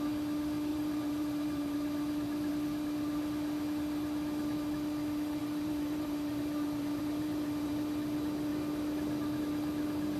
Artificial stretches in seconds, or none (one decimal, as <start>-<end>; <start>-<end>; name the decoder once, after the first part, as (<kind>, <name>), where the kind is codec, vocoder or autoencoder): 0.7-2.5 (vocoder, BigVGAN v2); 5.4-7.7

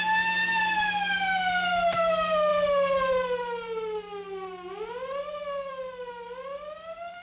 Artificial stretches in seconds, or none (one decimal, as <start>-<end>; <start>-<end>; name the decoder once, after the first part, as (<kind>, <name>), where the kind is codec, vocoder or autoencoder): none